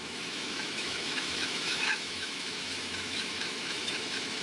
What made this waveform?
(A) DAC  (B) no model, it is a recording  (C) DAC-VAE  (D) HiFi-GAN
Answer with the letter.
C